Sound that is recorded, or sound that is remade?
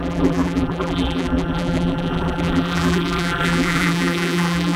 remade